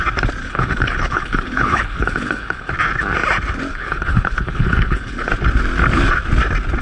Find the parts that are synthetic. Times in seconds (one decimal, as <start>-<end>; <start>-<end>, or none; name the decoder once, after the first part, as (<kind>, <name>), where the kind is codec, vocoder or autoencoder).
0.4-2.7 (codec, HILCodec); 3.7-5.3